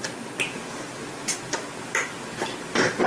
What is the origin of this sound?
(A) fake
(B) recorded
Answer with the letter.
B